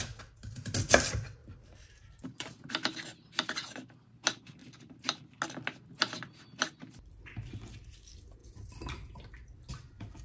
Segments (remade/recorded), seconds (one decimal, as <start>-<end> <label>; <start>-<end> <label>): 0.0-1.4 recorded; 1.4-2.7 remade; 2.7-4.6 recorded; 4.6-5.2 remade; 5.2-10.2 recorded